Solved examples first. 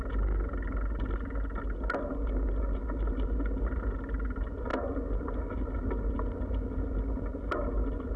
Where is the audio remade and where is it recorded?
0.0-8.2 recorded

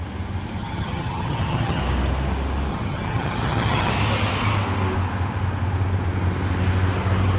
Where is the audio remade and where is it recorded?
0.0-0.6 recorded; 0.6-1.8 remade; 1.8-2.7 recorded; 2.7-3.9 remade; 3.9-7.4 recorded